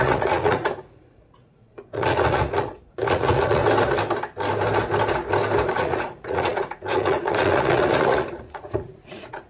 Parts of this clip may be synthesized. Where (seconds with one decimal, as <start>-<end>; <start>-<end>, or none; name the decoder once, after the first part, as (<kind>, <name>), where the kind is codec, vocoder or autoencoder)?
0.0-3.6 (vocoder, Vocos); 5.7-9.5